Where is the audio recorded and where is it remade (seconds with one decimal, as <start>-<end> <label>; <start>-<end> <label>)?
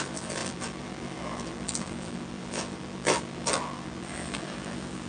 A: 0.0-5.1 remade